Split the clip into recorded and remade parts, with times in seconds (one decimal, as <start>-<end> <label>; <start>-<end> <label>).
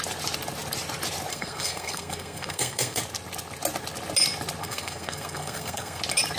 0.0-1.3 recorded; 1.3-3.0 remade; 3.0-4.6 recorded; 4.6-6.0 remade; 6.0-6.4 recorded